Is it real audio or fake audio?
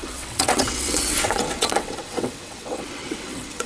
fake